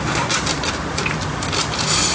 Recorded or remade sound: recorded